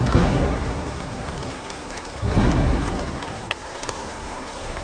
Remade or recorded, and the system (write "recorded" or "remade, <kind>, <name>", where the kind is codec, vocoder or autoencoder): remade, codec, SNAC